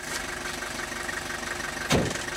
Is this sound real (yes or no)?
yes